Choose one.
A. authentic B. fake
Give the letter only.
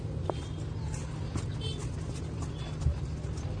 A